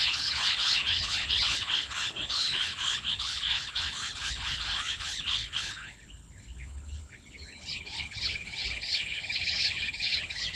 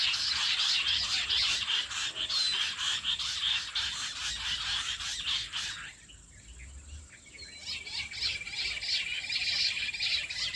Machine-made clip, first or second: first